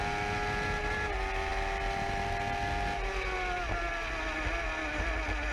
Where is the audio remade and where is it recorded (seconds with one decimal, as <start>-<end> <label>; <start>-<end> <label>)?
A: 0.0-5.5 recorded